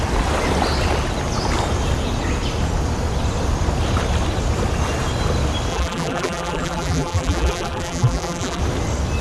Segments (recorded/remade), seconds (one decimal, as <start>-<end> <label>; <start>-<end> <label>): 0.0-5.7 recorded; 5.7-8.6 remade; 8.6-9.2 recorded